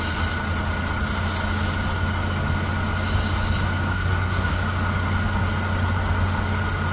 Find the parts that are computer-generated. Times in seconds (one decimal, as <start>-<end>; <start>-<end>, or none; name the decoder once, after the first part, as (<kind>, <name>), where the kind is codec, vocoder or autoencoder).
3.9-4.6 (codec, SNAC)